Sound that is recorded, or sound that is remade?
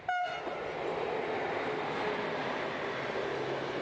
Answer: recorded